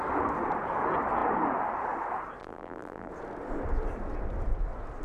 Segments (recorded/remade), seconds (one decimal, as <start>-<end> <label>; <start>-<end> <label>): 0.0-2.4 recorded; 2.4-3.1 remade; 3.1-5.0 recorded